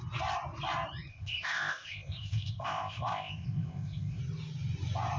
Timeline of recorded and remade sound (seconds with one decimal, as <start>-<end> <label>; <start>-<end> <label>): 0.0-1.1 recorded; 1.1-4.2 remade; 4.2-5.2 recorded